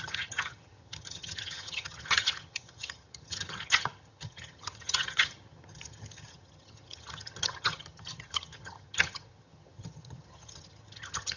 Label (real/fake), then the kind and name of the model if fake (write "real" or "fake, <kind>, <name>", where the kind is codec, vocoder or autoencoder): fake, vocoder, HiFi-GAN